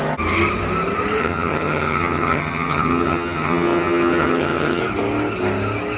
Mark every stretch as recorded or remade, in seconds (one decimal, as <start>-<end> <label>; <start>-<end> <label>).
0.0-1.2 recorded; 1.2-4.8 remade; 4.8-6.0 recorded